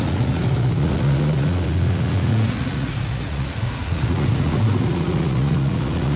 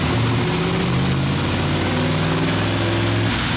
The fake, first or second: first